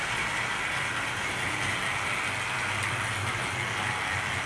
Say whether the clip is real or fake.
real